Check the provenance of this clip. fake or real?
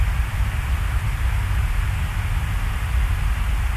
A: real